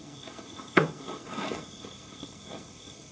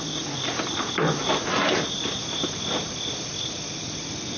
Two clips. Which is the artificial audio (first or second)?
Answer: first